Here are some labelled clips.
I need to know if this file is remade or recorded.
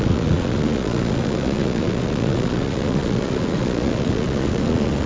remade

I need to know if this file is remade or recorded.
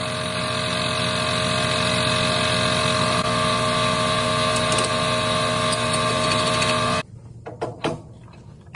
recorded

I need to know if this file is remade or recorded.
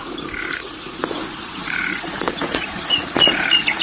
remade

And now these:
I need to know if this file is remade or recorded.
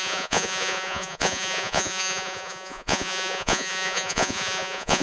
remade